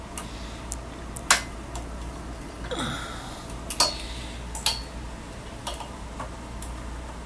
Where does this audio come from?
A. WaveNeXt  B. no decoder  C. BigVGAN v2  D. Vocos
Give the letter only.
B